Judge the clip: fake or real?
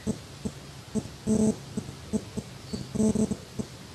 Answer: real